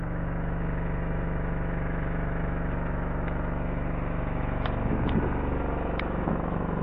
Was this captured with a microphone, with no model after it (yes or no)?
no